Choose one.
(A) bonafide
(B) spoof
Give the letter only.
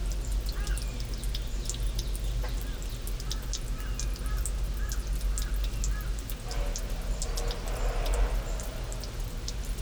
A